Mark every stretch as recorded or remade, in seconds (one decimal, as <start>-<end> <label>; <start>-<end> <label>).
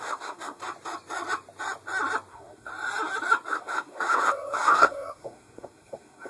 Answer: 0.0-0.6 remade; 0.6-2.3 recorded; 2.3-2.7 remade; 2.7-3.5 recorded; 3.5-6.3 remade